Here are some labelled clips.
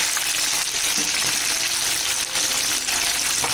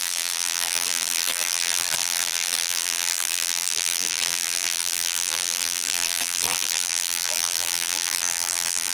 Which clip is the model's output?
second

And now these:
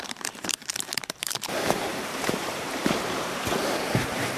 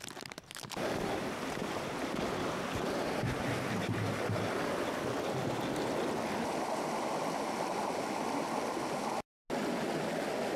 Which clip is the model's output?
first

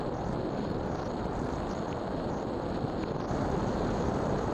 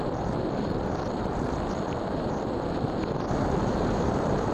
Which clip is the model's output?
second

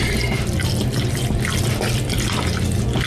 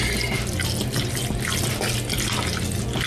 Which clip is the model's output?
first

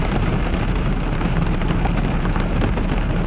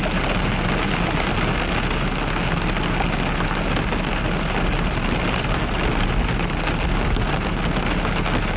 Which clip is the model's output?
first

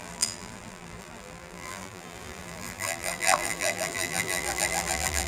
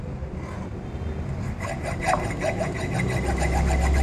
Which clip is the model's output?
first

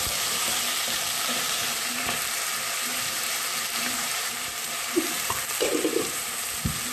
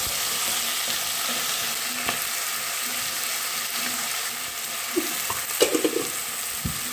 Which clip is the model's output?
first